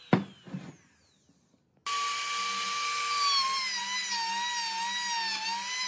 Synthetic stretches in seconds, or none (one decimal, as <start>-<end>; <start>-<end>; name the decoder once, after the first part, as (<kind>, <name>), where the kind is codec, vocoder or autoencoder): none